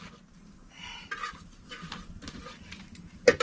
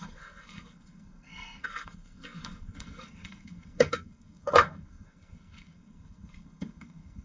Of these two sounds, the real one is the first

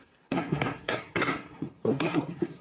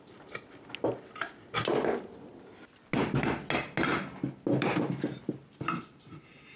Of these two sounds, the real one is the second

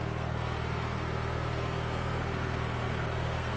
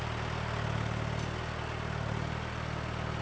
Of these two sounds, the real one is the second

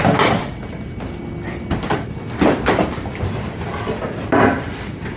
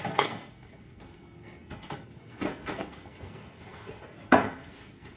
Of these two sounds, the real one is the first